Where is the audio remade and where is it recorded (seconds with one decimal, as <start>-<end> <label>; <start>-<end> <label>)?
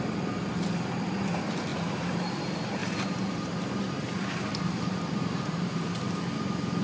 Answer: 0.0-1.7 recorded; 1.7-2.3 remade; 2.3-2.8 recorded; 2.8-6.1 remade; 6.1-6.8 recorded